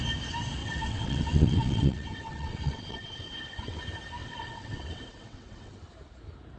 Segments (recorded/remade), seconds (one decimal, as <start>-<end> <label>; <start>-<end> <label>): 0.0-0.6 recorded; 0.6-3.8 remade; 3.8-4.2 recorded; 4.2-5.7 remade; 5.7-6.6 recorded